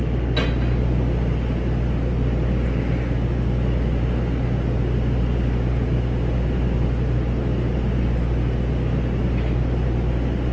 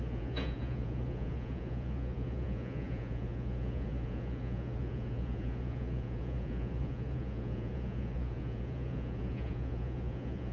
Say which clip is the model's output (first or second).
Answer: second